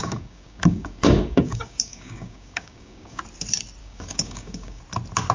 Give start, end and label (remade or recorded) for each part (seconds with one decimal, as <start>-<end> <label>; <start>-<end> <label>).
0.0-3.2 remade; 3.2-3.8 recorded; 3.8-4.8 remade; 4.8-5.3 recorded